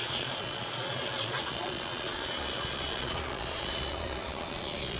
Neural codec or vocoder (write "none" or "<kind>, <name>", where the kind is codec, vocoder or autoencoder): vocoder, Vocos